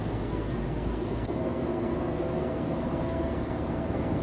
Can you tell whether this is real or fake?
fake